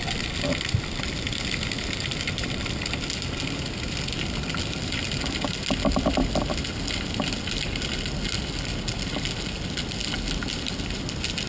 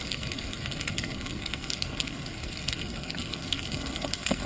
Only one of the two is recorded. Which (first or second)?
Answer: first